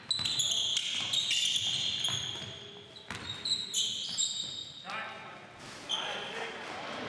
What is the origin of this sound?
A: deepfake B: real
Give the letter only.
B